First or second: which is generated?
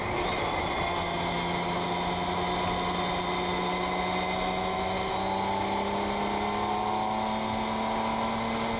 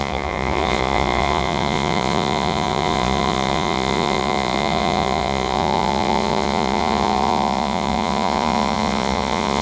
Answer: second